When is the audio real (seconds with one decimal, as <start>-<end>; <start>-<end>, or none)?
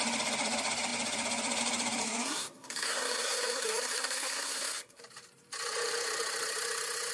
0.0-2.0; 5.0-7.1